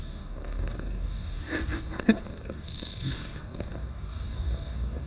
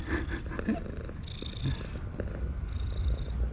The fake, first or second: first